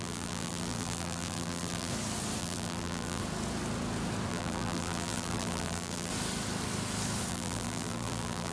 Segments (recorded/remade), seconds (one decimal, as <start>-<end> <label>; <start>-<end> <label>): 0.0-1.9 remade; 1.9-2.4 recorded; 2.4-3.2 remade; 3.2-4.3 recorded; 4.3-6.1 remade; 6.1-7.3 recorded; 7.3-8.5 remade